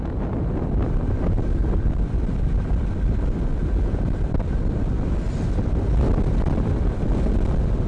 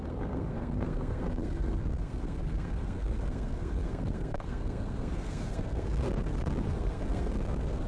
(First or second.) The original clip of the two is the first